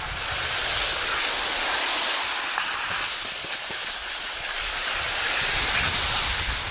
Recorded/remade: recorded